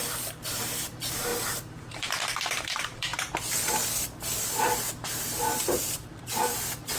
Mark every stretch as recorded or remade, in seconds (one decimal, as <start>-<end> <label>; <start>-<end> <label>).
0.0-3.1 remade; 3.1-4.4 recorded; 4.4-7.0 remade